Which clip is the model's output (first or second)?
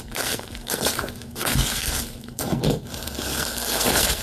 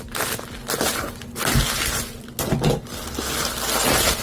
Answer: first